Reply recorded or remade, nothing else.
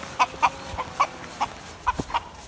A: recorded